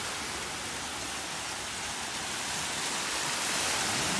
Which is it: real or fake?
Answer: real